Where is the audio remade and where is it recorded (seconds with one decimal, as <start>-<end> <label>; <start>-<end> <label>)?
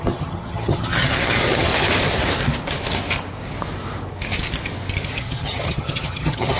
0.0-1.7 remade; 1.7-5.2 recorded; 5.2-6.6 remade